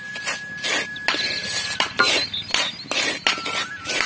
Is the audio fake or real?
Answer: real